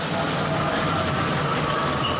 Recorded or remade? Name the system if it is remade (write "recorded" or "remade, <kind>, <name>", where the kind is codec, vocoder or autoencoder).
remade, vocoder, BigVGAN v2